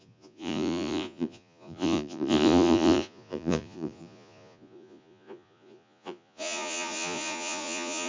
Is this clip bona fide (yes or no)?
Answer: no